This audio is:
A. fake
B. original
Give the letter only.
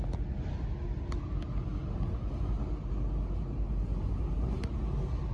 B